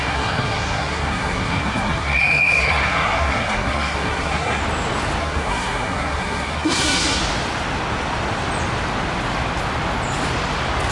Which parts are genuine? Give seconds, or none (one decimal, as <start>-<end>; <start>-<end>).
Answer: 4.6-5.2; 7.2-10.9